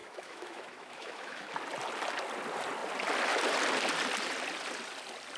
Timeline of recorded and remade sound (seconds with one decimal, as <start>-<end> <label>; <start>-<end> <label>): 0.0-1.5 remade; 1.5-5.4 recorded